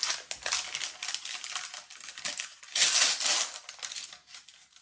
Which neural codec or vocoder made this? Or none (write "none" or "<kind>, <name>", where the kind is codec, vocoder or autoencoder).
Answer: none